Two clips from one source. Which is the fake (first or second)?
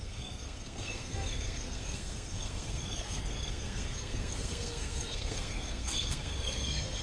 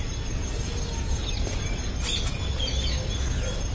first